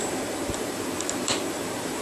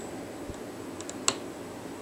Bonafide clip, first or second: second